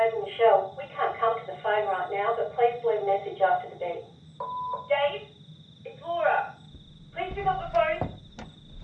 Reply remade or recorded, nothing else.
recorded